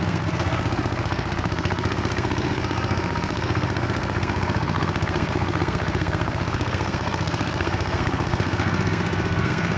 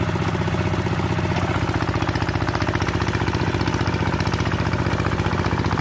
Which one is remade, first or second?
first